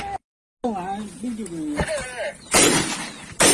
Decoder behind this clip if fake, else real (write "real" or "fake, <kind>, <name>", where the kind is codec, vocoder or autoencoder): real